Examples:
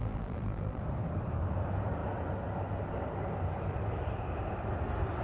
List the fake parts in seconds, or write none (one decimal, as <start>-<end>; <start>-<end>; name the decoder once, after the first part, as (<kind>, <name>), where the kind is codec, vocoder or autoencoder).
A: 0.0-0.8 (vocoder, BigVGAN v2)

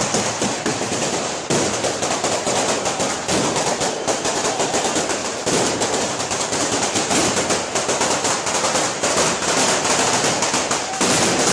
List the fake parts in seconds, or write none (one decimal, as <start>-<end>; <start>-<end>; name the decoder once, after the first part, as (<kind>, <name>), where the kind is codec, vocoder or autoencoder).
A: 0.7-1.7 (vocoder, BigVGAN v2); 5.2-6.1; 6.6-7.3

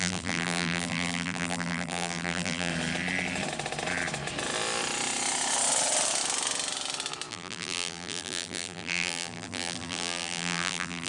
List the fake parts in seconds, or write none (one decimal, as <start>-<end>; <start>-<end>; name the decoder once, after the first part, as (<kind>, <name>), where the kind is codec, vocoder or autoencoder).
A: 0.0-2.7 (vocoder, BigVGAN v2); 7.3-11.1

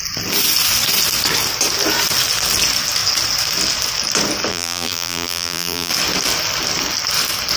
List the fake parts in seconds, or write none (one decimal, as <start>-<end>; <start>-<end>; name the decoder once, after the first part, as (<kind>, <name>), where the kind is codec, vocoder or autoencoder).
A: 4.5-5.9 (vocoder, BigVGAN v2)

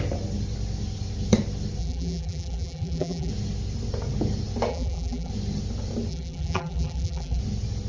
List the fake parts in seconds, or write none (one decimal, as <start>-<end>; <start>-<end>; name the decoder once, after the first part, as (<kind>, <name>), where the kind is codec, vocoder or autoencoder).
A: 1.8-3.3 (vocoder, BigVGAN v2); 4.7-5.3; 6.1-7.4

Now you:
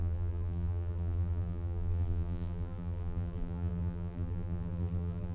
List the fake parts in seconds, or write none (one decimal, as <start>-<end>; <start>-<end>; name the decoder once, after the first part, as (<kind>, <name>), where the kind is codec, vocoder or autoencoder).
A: 0.0-5.3 (vocoder, BigVGAN v2)

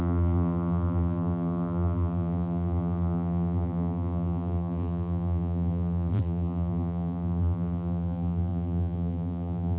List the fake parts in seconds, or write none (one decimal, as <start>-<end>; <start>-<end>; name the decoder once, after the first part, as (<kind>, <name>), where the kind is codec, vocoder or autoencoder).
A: 0.0-9.8 (vocoder, BigVGAN v2)

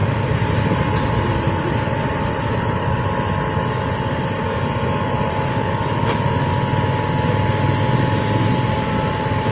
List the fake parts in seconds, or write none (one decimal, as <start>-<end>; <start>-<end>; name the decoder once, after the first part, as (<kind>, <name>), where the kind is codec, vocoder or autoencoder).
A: 0.0-1.3 (vocoder, BigVGAN v2)